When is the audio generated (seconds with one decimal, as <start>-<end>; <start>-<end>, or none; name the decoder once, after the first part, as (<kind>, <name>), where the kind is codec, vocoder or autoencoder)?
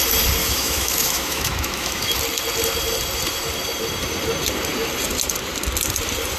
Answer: 0.4-2.2 (autoencoder, DAC-VAE)